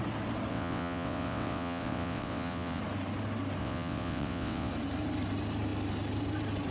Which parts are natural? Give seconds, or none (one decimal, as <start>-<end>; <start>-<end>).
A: 0.0-0.5; 2.8-3.6; 4.7-6.7